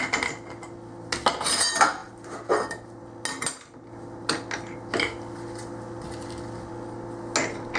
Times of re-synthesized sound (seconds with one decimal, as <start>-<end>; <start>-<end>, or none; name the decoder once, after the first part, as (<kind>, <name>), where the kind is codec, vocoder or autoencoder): none